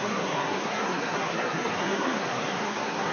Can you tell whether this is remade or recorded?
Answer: remade